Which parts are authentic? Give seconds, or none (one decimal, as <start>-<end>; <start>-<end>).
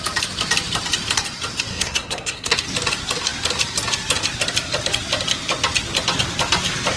0.0-1.7; 2.5-7.0